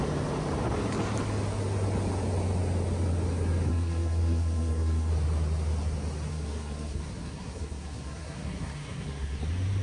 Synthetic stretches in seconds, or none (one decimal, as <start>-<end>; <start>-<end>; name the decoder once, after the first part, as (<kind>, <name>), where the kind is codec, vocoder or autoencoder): 3.7-5.1 (codec, SNAC); 6.3-9.4